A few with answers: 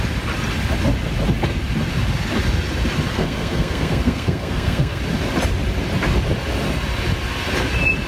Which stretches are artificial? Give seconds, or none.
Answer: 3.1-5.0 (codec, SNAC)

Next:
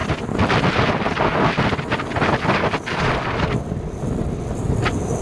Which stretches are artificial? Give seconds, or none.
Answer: 0.0-3.1 (vocoder, BigVGAN v2)

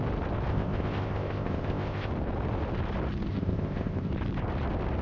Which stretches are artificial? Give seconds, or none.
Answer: 0.5-2.1 (codec, ZipCodec); 3.3-4.1

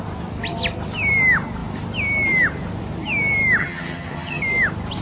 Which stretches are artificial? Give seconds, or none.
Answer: 3.6-4.4 (vocoder, HiFi-GAN)

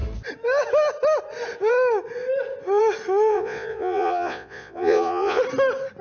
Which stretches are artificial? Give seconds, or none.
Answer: 3.3-5.4 (vocoder, Vocos)

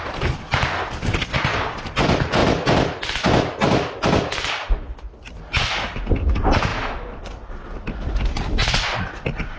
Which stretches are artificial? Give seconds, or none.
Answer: none

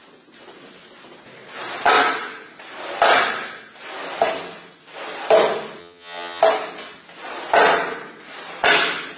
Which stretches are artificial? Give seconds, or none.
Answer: 5.8-6.4 (vocoder, HiFi-GAN)

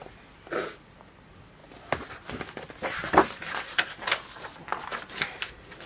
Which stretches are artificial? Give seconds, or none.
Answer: none